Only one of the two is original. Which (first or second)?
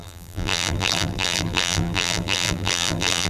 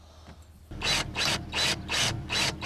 second